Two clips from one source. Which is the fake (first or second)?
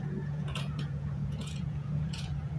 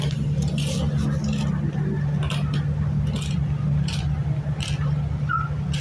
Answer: first